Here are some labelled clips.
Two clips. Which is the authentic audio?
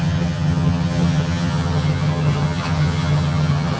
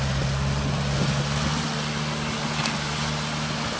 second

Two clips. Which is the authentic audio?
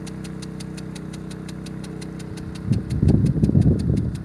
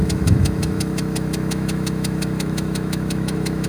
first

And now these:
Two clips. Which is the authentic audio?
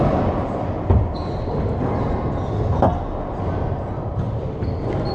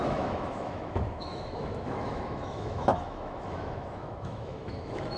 first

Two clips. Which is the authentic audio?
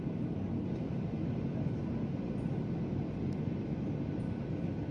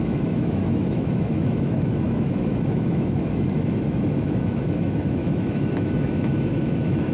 first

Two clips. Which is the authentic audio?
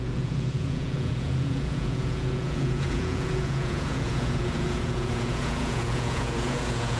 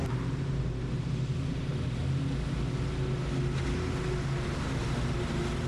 second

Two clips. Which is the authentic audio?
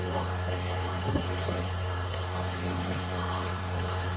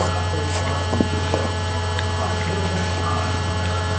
second